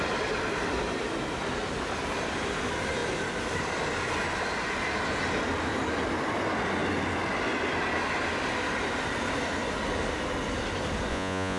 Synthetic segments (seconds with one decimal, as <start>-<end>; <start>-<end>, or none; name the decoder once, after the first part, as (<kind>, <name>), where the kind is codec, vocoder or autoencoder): 11.1-11.6 (vocoder, Vocos)